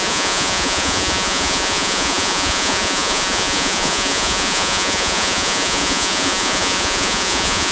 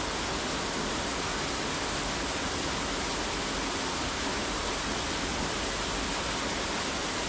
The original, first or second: second